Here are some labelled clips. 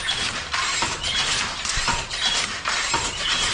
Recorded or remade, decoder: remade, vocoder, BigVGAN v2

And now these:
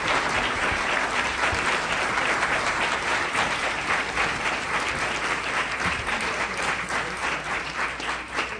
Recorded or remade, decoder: remade, vocoder, BigVGAN v2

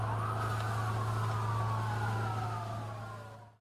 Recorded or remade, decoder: recorded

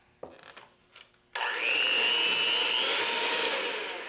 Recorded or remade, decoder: recorded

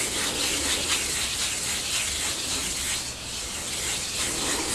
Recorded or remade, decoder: recorded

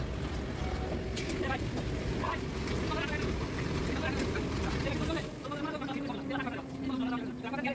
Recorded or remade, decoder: remade, vocoder, BigVGAN v2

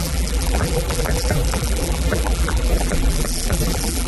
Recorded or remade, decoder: remade, vocoder, BigVGAN v2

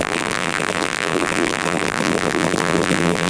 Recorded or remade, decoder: remade, vocoder, BigVGAN v2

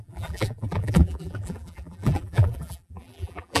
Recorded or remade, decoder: remade, vocoder, BigVGAN v2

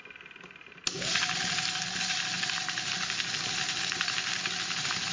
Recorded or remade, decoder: recorded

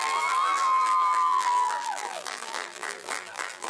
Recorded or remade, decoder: remade, vocoder, BigVGAN v2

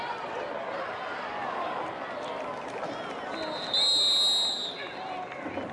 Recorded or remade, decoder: recorded